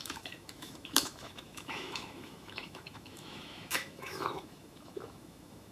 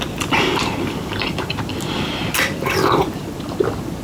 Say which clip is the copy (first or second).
first